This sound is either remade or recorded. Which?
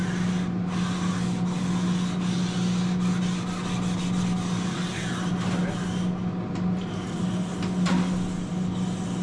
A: recorded